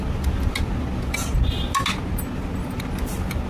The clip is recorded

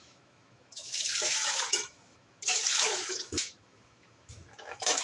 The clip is remade